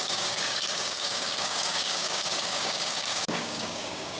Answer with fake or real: fake